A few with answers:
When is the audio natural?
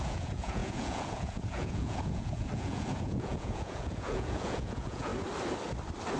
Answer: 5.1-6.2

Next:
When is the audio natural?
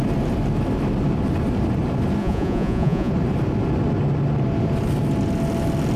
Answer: 0.0-2.2; 3.1-6.0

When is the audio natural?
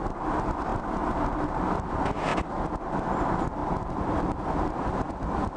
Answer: 0.0-5.6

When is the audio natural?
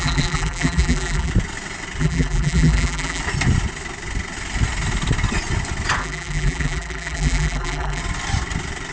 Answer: 1.3-2.0; 3.2-6.0; 8.0-8.9